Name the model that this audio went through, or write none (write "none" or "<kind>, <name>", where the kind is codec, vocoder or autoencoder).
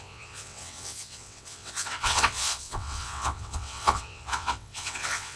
vocoder, WaveNeXt